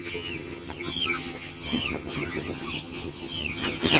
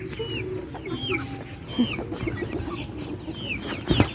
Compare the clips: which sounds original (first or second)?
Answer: second